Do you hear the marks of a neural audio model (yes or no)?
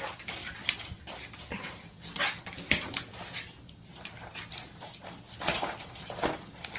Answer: no